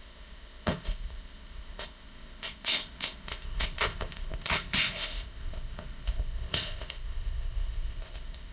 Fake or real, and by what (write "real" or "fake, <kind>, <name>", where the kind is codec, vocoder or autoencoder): fake, codec, ZipCodec